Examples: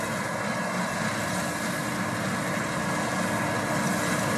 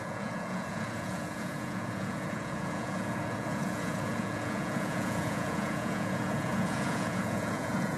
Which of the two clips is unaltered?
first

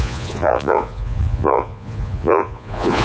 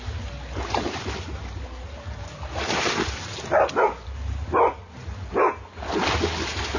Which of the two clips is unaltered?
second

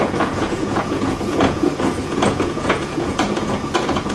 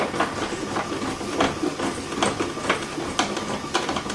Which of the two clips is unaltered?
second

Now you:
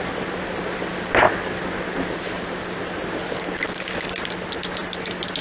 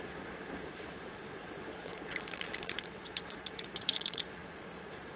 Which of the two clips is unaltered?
first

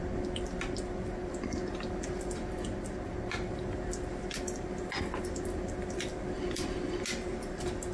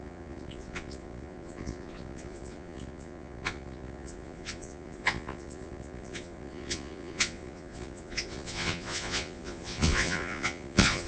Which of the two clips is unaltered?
first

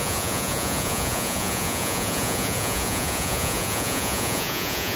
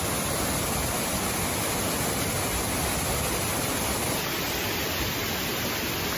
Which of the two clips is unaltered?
second